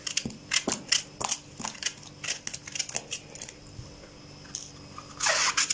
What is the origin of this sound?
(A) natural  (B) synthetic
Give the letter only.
A